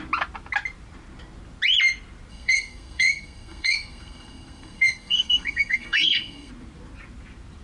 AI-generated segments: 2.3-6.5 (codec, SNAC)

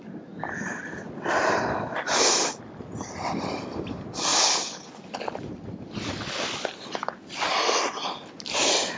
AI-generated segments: none